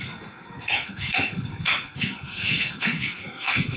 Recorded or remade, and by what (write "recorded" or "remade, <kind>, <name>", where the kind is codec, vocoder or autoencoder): remade, codec, SNAC